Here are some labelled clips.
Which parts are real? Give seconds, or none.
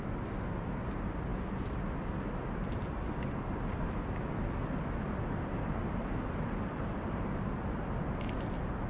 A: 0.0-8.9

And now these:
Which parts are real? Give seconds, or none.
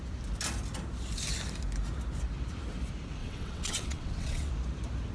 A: 0.0-3.2; 4.5-5.1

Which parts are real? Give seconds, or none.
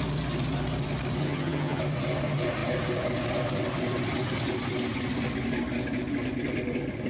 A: 0.0-1.2; 1.8-7.1